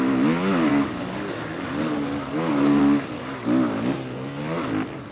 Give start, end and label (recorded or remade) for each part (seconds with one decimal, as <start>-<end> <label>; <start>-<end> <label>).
0.0-0.7 recorded; 0.7-2.8 remade; 2.8-5.1 recorded